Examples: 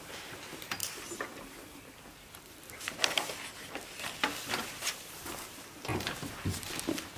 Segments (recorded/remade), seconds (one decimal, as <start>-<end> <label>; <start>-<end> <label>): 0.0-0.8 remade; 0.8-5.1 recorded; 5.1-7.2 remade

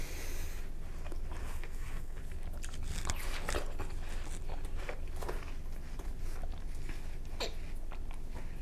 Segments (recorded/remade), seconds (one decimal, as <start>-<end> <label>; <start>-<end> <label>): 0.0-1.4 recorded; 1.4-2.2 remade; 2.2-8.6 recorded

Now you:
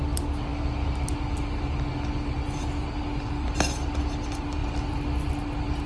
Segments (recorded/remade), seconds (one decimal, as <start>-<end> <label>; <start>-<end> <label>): 0.0-5.9 recorded

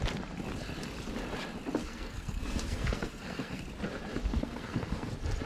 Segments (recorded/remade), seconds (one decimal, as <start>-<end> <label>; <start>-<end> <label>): 0.0-1.8 recorded; 1.8-3.6 remade; 3.6-4.3 recorded; 4.3-5.1 remade; 5.1-5.5 recorded

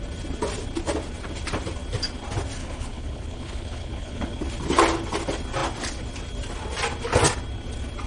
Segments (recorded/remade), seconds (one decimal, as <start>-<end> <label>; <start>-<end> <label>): 0.0-2.6 recorded; 2.6-4.4 remade; 4.4-8.1 recorded